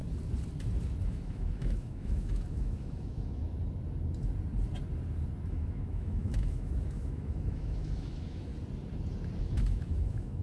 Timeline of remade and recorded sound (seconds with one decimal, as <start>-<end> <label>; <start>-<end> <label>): 0.0-1.0 recorded; 1.0-3.4 remade; 3.4-5.5 recorded; 5.5-8.5 remade; 8.5-9.4 recorded; 9.4-10.4 remade